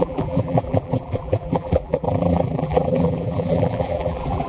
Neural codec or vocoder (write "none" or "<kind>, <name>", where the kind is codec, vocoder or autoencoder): vocoder, BigVGAN v2